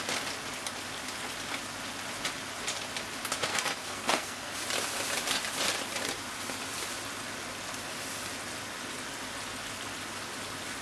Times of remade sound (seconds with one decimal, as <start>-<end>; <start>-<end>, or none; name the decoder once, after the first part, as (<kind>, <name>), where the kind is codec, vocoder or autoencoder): 3.5-4.5 (codec, SNAC)